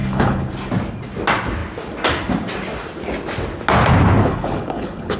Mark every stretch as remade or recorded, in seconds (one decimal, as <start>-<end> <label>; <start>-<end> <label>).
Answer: 0.0-0.5 remade; 0.5-4.2 recorded; 4.2-5.2 remade